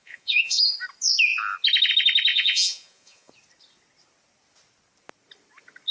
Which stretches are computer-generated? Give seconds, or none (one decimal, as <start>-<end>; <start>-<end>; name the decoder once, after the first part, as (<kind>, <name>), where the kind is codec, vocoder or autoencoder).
0.0-0.7 (vocoder, Vocos); 2.3-3.3